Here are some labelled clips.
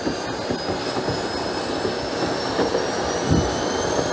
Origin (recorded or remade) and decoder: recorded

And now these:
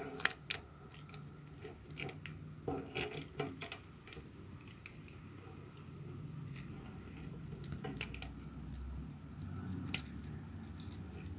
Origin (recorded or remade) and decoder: recorded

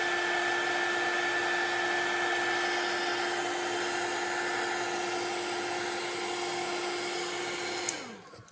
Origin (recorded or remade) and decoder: recorded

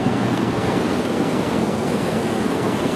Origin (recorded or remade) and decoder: remade, codec, SNAC